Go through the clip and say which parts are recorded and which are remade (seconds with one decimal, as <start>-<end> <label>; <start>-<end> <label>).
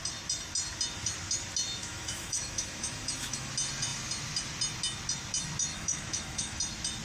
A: 0.0-1.8 recorded; 1.8-3.5 remade; 3.5-5.7 recorded; 5.7-6.6 remade; 6.6-7.0 recorded